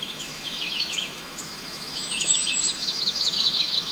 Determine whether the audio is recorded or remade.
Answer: remade